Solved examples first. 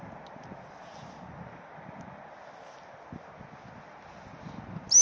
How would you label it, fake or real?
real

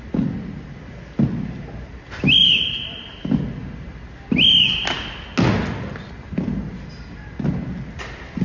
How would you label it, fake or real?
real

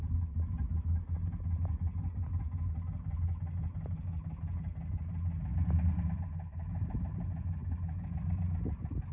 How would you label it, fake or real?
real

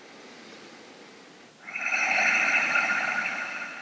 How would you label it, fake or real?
real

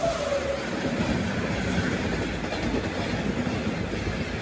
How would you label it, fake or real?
real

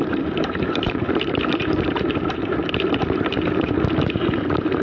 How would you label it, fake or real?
fake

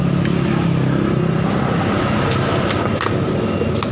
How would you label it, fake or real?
real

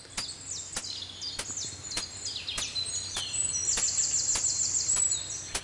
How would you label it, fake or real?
real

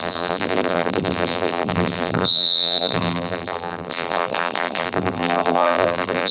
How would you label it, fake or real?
fake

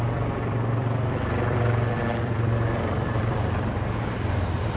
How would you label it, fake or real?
fake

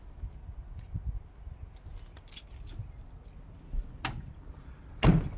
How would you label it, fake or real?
real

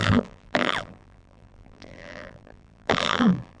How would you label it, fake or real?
fake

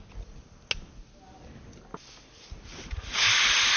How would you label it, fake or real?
real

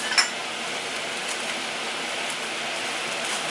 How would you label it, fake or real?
real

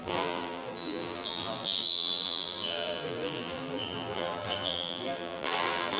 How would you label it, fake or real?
fake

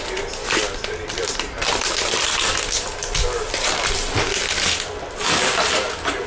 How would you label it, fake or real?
real